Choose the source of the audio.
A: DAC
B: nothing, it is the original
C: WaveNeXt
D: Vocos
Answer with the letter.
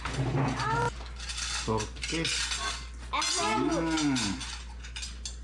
B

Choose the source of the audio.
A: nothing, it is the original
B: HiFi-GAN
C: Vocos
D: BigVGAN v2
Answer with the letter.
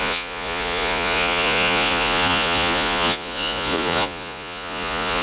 C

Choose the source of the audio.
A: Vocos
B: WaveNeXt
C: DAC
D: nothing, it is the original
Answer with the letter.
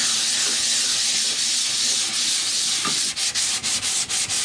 D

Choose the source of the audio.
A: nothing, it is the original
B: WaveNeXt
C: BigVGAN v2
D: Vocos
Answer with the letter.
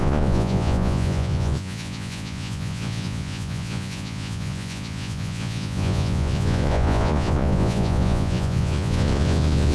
D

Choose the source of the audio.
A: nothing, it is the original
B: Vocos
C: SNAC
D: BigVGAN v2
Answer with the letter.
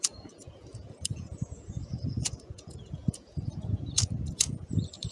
B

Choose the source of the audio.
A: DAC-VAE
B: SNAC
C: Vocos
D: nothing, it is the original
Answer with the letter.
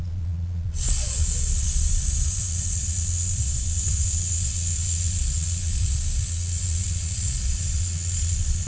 C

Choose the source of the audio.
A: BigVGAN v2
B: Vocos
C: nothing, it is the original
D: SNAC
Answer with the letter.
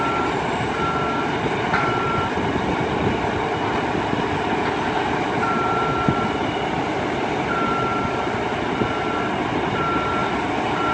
C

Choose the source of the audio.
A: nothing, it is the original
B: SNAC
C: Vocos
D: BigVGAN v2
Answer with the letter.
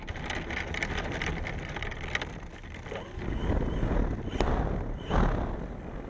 A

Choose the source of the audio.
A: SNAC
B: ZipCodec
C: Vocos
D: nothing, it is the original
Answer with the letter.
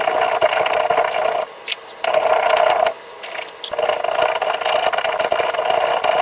D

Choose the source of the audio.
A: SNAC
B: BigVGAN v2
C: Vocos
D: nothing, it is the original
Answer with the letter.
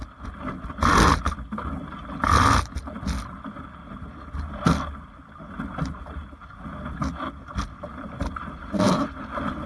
D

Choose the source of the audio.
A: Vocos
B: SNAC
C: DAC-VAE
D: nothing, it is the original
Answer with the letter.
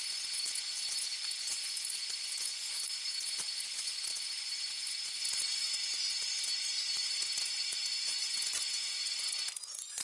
A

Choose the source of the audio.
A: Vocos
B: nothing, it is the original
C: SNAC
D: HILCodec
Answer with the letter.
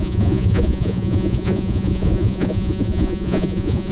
A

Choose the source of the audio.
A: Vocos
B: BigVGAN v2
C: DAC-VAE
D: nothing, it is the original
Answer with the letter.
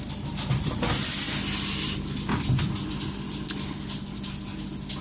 D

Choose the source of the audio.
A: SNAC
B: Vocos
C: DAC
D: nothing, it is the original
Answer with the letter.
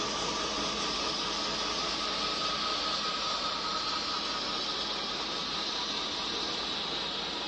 D